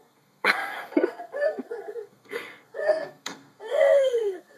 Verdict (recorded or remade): remade